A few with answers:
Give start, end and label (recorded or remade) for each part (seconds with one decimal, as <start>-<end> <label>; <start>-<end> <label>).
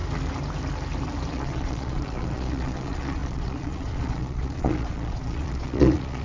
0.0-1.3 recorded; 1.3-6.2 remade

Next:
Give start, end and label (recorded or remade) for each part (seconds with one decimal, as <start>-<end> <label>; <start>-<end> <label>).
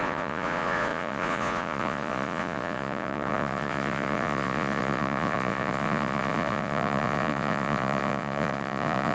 0.0-9.1 remade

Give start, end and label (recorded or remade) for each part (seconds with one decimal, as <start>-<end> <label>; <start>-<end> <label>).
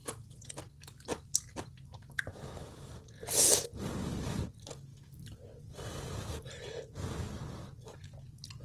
0.0-0.5 remade; 0.5-8.6 recorded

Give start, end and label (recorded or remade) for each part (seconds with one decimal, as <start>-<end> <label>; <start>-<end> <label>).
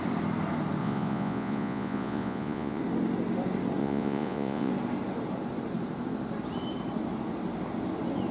0.0-0.8 recorded; 0.8-2.8 remade; 2.8-3.8 recorded; 3.8-4.7 remade; 4.7-8.3 recorded